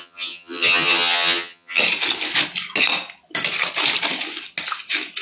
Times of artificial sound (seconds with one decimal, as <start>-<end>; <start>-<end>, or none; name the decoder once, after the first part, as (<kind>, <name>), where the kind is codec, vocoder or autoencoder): 0.0-1.8 (vocoder, HiFi-GAN)